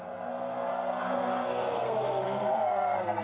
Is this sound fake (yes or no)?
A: yes